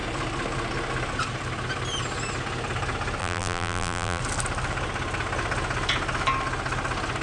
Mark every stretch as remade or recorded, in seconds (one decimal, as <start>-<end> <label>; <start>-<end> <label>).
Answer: 0.0-3.2 recorded; 3.2-4.2 remade; 4.2-7.2 recorded